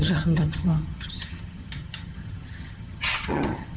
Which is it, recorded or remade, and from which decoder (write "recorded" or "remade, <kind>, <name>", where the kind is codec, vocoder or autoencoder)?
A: remade, vocoder, HiFi-GAN